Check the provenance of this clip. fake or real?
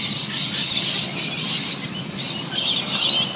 real